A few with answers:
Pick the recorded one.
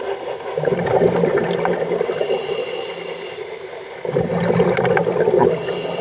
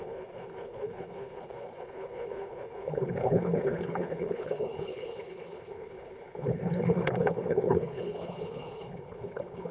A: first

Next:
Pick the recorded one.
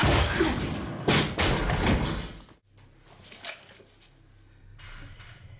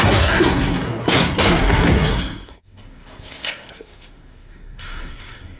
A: first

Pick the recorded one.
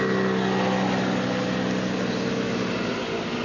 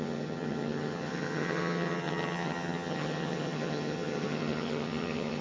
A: first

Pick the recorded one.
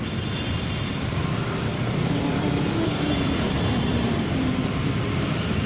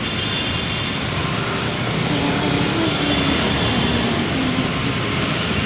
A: second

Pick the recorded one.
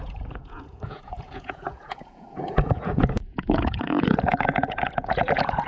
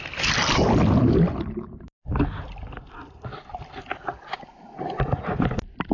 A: second